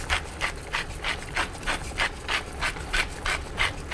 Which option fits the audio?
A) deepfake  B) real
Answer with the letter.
B